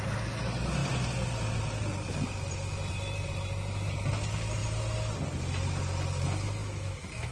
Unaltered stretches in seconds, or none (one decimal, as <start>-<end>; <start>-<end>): 0.0-6.6